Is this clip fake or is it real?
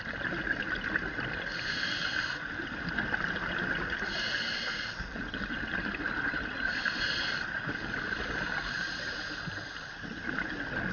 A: real